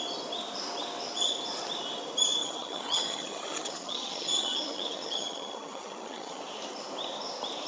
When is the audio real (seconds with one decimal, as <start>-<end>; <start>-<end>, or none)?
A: 0.0-2.4; 6.4-7.7